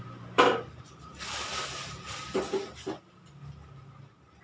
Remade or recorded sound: recorded